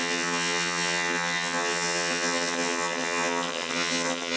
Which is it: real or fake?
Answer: fake